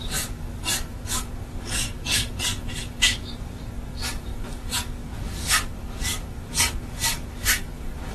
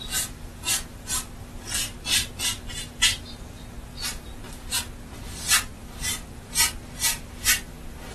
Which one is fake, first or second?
first